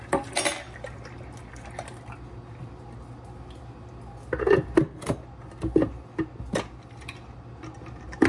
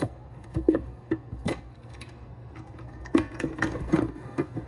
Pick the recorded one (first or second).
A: first